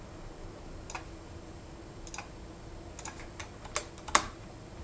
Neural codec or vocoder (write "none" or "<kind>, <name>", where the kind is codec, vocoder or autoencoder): none